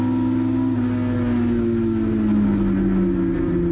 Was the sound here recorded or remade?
recorded